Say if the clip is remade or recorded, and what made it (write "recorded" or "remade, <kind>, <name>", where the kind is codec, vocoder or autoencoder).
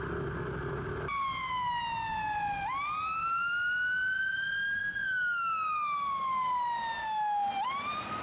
recorded